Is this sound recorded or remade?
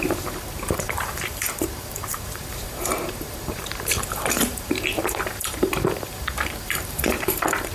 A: remade